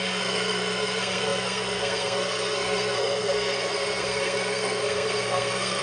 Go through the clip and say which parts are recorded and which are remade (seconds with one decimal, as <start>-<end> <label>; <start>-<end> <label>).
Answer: 0.0-5.8 remade